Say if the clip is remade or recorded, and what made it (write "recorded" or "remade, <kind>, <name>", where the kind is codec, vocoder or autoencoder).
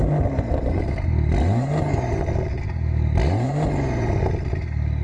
recorded